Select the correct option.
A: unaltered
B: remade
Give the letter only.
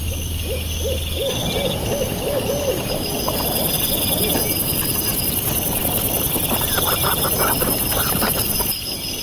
A